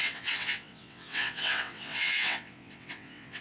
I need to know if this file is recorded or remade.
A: remade